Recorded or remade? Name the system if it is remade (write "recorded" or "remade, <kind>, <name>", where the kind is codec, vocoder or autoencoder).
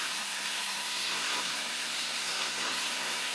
remade, codec, SNAC